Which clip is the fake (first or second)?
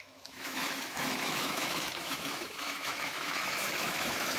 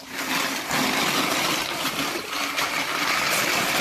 first